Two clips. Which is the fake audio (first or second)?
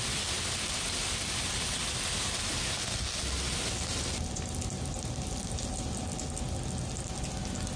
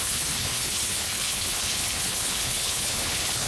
second